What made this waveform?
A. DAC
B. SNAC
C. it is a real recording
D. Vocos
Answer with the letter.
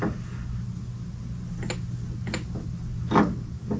C